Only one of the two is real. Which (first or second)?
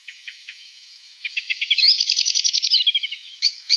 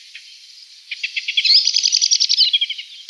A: second